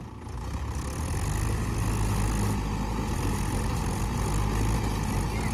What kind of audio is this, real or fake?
real